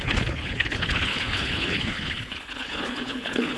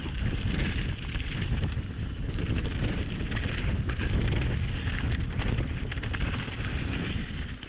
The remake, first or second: first